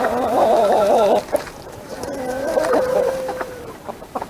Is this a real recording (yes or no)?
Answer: no